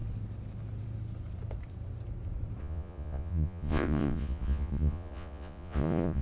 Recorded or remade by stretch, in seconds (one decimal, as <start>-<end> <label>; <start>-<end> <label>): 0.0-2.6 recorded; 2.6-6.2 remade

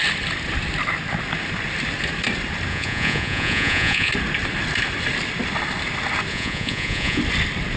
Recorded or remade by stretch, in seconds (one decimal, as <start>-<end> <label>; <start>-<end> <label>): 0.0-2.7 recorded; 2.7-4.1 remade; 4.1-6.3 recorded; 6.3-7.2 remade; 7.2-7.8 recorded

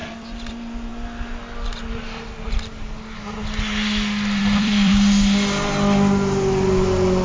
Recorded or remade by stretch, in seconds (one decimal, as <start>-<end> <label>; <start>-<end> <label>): 0.0-0.5 remade; 0.5-4.4 recorded; 4.4-4.9 remade; 4.9-7.2 recorded

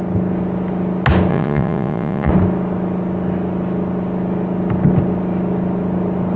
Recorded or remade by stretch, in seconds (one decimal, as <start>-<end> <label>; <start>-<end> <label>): 0.0-1.3 recorded; 1.3-2.3 remade; 2.3-6.4 recorded

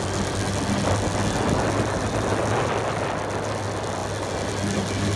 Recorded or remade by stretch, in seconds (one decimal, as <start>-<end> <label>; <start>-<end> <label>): 0.0-5.2 recorded

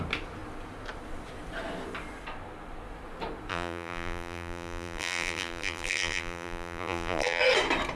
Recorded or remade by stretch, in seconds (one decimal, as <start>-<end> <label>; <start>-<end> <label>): 0.0-3.5 recorded; 3.5-7.4 remade; 7.4-8.0 recorded

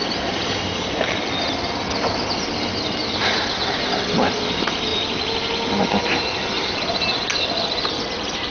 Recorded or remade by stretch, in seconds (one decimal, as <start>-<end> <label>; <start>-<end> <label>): 0.0-1.4 remade; 1.4-8.5 recorded